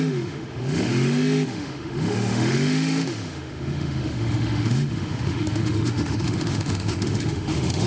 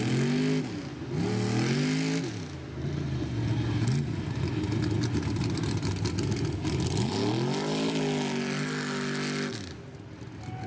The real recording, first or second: second